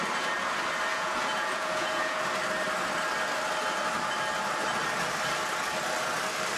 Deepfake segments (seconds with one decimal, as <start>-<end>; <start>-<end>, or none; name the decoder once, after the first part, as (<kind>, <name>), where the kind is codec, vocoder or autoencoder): 0.9-2.2 (vocoder, Vocos)